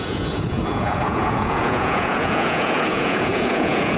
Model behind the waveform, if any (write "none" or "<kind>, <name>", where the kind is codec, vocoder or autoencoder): vocoder, Vocos